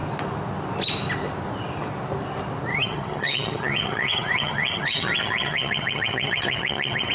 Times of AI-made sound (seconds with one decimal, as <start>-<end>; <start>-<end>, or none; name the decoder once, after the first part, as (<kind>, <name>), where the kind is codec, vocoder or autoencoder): 2.7-7.1 (vocoder, HiFi-GAN)